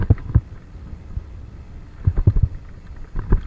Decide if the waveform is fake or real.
real